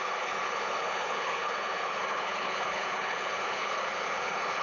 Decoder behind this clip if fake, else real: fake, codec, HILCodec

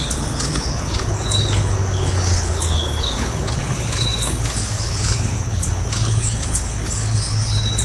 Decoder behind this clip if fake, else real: fake, codec, HILCodec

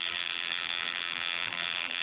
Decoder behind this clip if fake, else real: fake, vocoder, BigVGAN v2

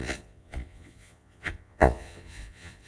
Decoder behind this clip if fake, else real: fake, vocoder, Vocos